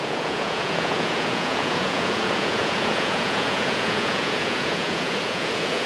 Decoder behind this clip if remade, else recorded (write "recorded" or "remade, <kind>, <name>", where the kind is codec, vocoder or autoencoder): remade, vocoder, Vocos